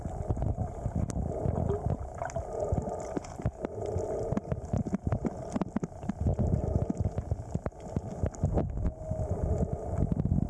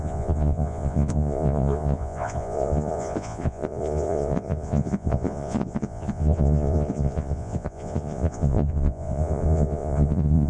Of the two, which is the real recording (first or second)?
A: first